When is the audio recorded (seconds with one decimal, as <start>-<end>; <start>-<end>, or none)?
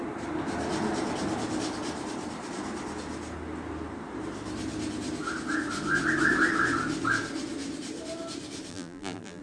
0.0-8.7